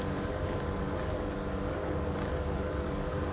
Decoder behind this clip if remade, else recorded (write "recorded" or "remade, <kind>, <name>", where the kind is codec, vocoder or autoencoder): remade, codec, DAC